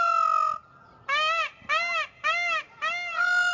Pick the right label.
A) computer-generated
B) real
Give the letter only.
B